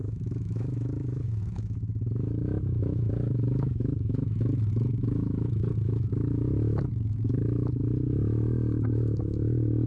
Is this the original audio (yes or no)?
no